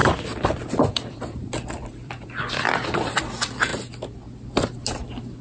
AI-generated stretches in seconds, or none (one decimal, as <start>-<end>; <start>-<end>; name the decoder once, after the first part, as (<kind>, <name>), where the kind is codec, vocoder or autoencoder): 0.0-3.2 (vocoder, BigVGAN v2)